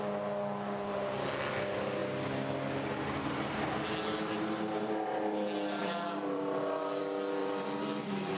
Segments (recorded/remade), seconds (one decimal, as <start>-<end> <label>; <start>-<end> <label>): 0.0-5.8 recorded; 5.8-7.0 remade; 7.0-7.4 recorded; 7.4-8.4 remade

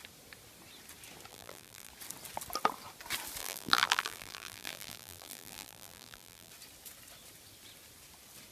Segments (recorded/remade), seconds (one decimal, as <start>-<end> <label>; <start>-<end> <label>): 0.0-1.3 recorded; 1.3-1.9 remade; 1.9-3.4 recorded; 3.4-6.5 remade; 6.5-8.5 recorded